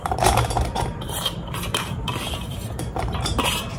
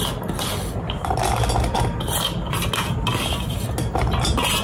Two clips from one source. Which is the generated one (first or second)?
first